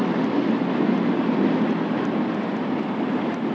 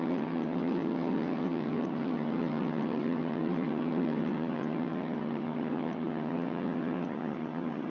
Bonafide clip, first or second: first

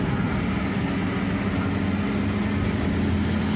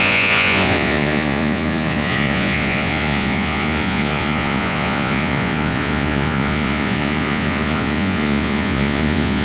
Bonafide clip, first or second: first